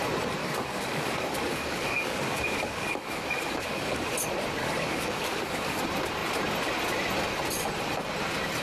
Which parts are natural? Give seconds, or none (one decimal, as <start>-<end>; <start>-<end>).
0.0-0.4; 4.1-4.6; 5.8-8.6